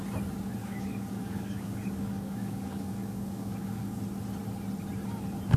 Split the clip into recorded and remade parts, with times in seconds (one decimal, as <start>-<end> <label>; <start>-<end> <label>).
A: 0.0-0.6 recorded; 0.6-4.0 remade; 4.0-5.6 recorded

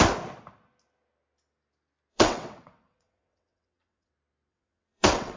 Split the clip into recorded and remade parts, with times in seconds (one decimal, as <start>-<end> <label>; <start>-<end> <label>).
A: 0.0-2.1 recorded; 2.1-4.1 remade; 4.1-4.5 recorded; 4.5-5.4 remade